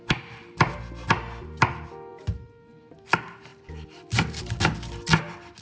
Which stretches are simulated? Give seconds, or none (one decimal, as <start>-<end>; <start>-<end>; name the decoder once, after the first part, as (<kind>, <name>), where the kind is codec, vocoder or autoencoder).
2.1-2.8 (vocoder, BigVGAN v2); 3.5-4.4